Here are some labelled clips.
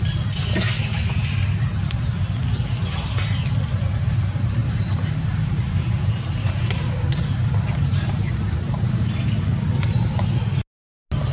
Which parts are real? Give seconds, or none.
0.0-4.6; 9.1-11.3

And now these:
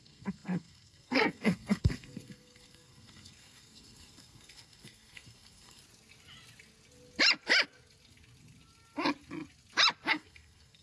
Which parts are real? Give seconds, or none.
5.8-10.1

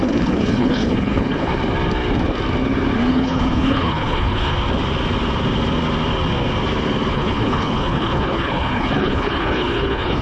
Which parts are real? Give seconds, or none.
1.5-3.1; 4.5-7.1

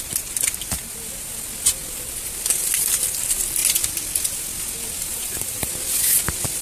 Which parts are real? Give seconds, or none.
0.0-5.1; 5.7-6.6

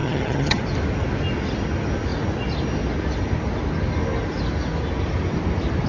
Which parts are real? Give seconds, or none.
0.6-5.9

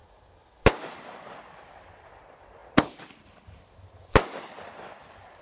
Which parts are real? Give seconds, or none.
0.0-0.7

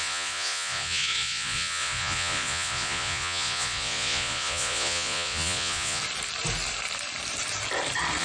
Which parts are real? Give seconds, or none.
6.0-8.2